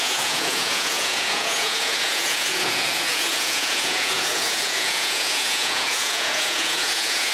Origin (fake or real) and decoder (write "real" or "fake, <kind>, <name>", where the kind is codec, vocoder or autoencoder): fake, vocoder, Vocos